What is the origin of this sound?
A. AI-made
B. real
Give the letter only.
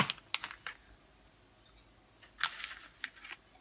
B